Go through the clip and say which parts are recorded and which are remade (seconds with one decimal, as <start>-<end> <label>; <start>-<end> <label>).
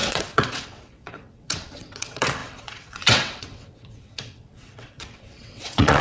0.0-6.0 remade